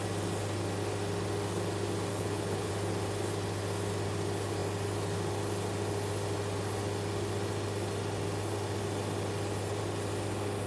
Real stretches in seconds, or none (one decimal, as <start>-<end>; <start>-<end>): 0.0-2.1; 2.7-10.7